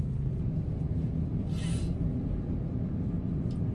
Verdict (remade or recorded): recorded